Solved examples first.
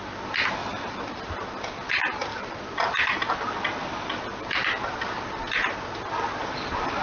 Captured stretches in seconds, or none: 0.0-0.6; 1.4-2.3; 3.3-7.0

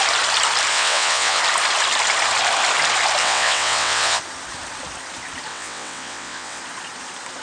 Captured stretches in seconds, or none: 0.0-0.7; 1.4-3.2; 4.2-5.5; 6.6-7.4

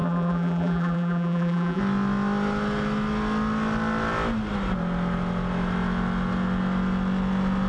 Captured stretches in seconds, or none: 1.8-7.7

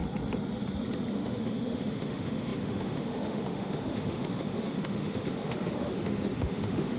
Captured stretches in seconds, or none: 0.0-1.1

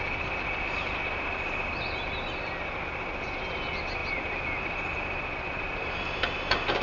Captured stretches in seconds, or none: 0.0-6.8